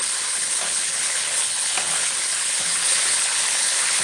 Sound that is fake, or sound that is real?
fake